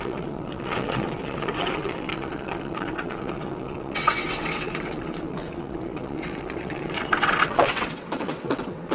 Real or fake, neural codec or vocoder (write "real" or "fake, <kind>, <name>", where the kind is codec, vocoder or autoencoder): fake, vocoder, WaveNeXt